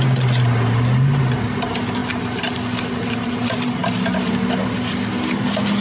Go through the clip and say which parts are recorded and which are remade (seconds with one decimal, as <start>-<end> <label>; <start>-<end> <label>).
0.0-5.8 recorded